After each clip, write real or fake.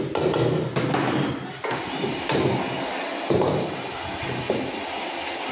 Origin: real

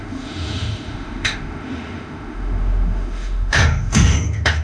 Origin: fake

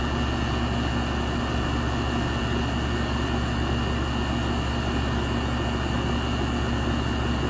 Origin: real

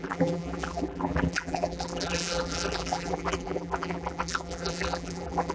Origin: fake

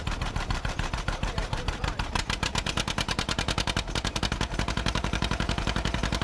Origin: fake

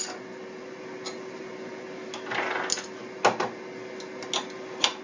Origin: real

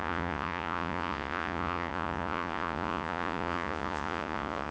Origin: fake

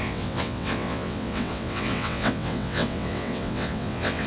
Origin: fake